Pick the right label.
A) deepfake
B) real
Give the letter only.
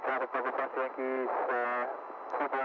B